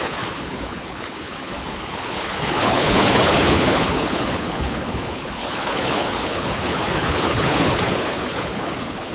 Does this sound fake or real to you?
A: fake